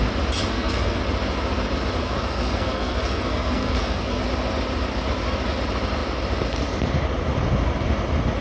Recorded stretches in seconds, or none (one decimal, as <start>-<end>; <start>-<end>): 0.0-0.5; 1.0-2.0; 4.2-8.4